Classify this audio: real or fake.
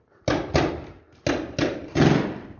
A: real